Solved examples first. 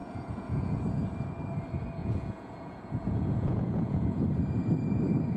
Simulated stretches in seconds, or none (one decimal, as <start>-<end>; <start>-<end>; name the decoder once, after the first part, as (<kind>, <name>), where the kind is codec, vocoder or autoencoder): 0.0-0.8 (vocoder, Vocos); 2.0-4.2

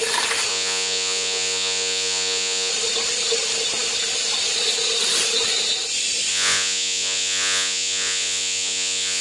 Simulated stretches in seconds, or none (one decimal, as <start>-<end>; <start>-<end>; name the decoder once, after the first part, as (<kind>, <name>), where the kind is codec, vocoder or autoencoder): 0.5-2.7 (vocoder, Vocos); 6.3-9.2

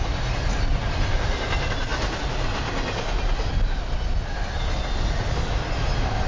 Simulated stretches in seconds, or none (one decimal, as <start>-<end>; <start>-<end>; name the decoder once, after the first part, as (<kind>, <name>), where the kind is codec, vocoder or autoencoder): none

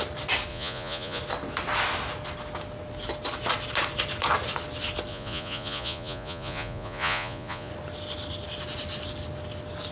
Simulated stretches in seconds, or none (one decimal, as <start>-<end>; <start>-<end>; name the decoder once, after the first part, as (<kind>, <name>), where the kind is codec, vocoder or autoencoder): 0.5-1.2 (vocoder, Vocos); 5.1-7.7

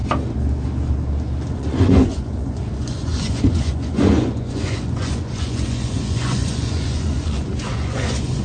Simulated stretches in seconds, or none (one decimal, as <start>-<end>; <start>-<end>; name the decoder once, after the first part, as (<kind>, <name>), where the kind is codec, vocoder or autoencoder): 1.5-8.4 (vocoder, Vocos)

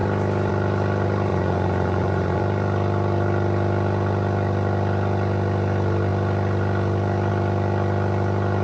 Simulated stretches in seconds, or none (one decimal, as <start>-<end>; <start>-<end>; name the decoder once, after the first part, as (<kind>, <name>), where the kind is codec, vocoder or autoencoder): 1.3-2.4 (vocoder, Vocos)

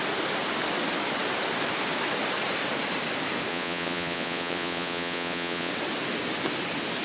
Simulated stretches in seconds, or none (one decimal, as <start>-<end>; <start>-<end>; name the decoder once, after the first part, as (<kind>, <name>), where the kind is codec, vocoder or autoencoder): 3.5-5.7 (vocoder, Vocos)

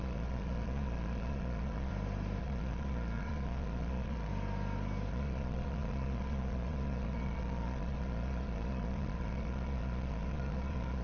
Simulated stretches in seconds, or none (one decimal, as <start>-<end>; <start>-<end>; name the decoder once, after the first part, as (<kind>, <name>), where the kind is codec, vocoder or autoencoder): 0.0-1.9 (vocoder, Vocos); 2.4-4.3; 5.1-11.0